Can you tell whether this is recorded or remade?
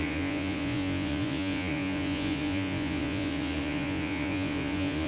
remade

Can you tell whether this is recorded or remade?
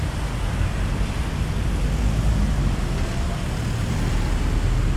recorded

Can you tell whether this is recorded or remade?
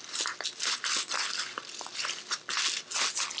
recorded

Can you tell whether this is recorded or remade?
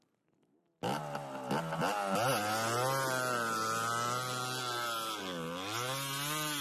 recorded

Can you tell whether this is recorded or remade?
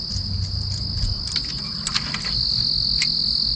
recorded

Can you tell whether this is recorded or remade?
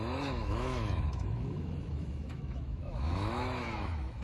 remade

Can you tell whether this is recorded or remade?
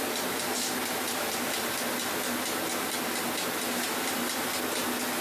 recorded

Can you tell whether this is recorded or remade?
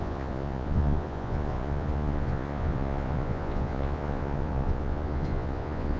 remade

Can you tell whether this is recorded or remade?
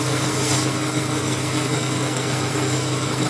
remade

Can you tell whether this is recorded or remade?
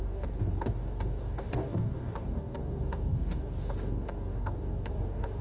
remade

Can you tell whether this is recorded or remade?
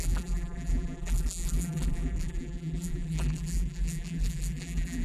remade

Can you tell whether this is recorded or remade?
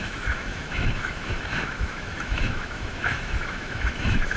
remade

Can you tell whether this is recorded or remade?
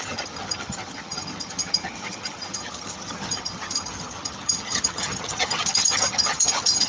remade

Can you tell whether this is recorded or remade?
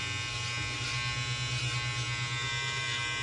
recorded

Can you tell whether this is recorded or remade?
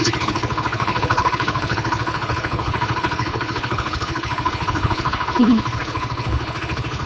remade